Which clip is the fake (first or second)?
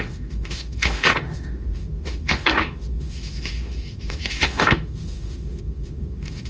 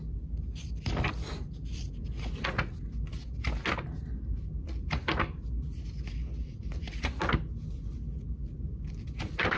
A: first